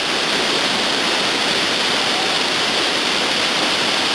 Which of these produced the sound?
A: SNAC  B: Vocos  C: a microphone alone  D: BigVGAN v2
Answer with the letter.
D